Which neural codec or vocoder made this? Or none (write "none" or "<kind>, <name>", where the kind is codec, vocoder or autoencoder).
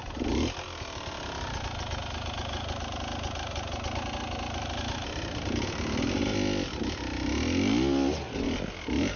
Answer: none